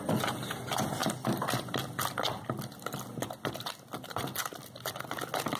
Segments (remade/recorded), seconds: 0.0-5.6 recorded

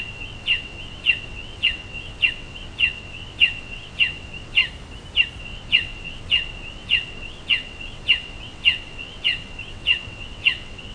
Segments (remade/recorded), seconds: 0.0-4.6 remade; 4.6-5.4 recorded; 5.4-10.9 remade

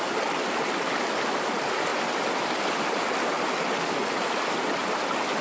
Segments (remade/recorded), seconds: 0.0-5.4 recorded

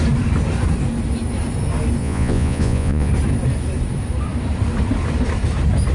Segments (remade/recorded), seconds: 0.0-2.0 recorded; 2.0-3.1 remade; 3.1-5.9 recorded

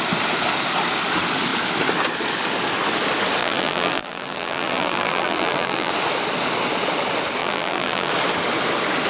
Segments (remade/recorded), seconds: 0.0-3.4 recorded; 3.4-5.9 remade; 5.9-7.4 recorded; 7.4-8.1 remade; 8.1-9.1 recorded

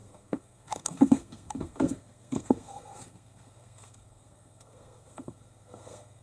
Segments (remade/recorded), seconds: 0.0-6.2 remade